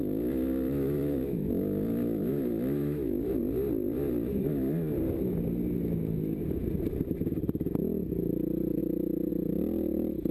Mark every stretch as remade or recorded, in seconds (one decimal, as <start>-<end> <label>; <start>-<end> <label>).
0.0-3.4 remade; 3.4-10.3 recorded